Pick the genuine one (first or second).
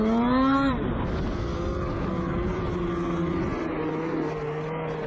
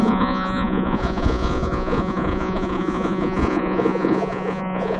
first